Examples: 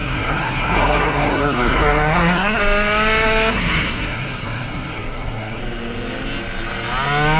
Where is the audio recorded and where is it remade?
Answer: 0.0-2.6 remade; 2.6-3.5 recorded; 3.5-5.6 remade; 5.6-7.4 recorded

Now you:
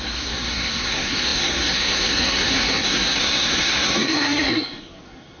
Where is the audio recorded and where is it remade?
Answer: 0.0-5.4 remade

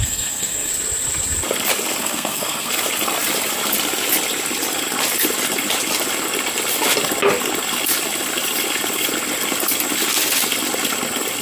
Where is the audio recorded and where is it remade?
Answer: 0.0-0.7 remade; 0.7-2.0 recorded; 2.0-2.7 remade; 2.7-11.4 recorded

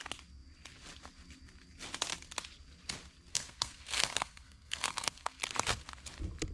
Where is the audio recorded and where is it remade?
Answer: 0.0-3.3 recorded; 3.3-5.4 remade; 5.4-6.5 recorded

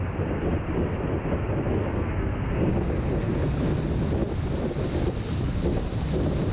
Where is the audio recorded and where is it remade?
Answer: 0.0-1.9 recorded; 1.9-2.7 remade; 2.7-6.5 recorded

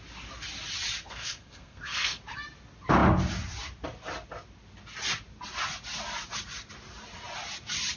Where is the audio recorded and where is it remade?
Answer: 0.0-1.0 recorded; 1.0-2.2 remade; 2.2-8.0 recorded

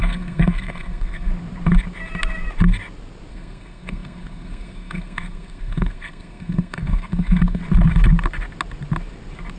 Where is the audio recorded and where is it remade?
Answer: 0.0-1.3 remade; 1.3-3.3 recorded; 3.3-7.6 remade; 7.6-9.6 recorded

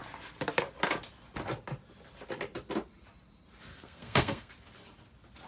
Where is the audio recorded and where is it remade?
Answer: 0.0-3.7 recorded; 3.7-4.5 remade; 4.5-5.5 recorded